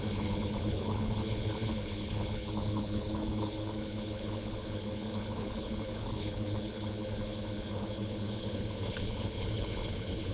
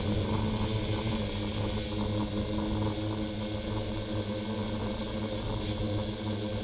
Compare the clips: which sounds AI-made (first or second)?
first